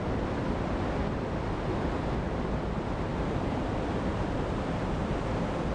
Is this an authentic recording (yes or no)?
yes